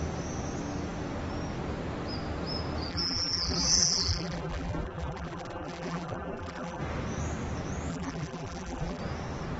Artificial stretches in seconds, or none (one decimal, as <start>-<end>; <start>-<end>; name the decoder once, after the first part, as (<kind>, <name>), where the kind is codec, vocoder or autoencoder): 2.9-6.8 (vocoder, BigVGAN v2); 7.9-9.0